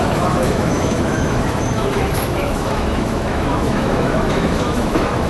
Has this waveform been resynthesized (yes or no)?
yes